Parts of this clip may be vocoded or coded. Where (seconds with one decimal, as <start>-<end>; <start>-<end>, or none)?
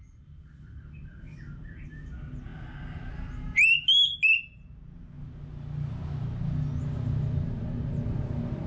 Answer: none